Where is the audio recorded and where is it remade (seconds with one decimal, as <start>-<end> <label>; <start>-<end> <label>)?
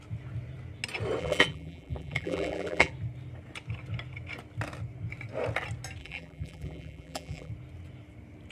0.0-1.2 recorded; 1.2-2.9 remade; 2.9-6.0 recorded; 6.0-7.5 remade; 7.5-8.5 recorded